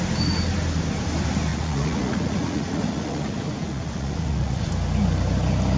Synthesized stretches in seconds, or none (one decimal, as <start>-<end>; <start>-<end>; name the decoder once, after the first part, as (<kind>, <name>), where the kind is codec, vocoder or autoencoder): 1.5-4.7 (vocoder, Vocos)